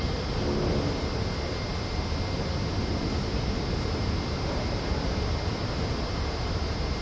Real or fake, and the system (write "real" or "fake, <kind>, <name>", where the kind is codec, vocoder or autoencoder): real